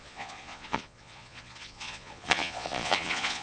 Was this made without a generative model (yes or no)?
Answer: no